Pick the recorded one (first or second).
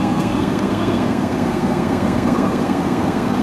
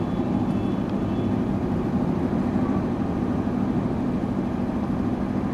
second